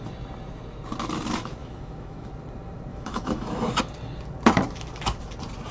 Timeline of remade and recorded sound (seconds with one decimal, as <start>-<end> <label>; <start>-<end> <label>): 0.0-1.6 recorded; 1.6-2.3 remade; 2.3-2.9 recorded; 2.9-3.8 remade; 3.8-5.7 recorded